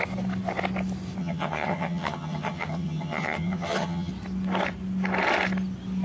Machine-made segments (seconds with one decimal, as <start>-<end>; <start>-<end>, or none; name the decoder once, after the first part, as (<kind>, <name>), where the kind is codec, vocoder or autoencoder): 1.2-4.1 (vocoder, HiFi-GAN)